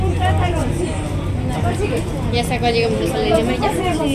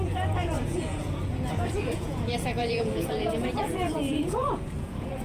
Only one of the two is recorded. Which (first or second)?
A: first